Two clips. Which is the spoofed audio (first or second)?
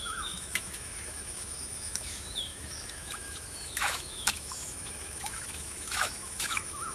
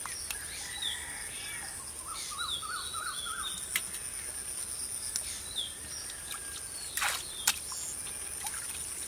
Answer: first